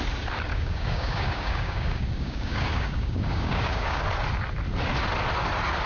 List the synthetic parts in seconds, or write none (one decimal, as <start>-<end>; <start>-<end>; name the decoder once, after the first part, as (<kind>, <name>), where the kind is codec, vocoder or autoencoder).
0.5-4.0 (codec, DAC)